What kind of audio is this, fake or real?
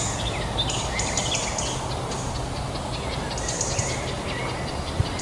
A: real